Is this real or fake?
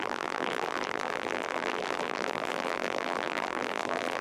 fake